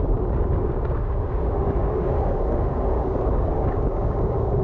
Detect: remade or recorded remade